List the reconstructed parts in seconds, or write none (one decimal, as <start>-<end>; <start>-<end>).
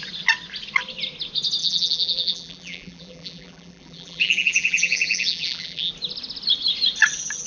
1.6-5.9